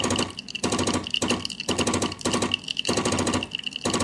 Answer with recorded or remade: recorded